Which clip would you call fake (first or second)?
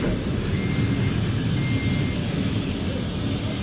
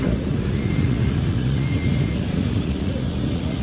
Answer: second